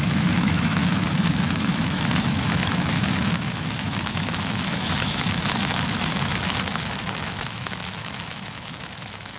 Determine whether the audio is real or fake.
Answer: fake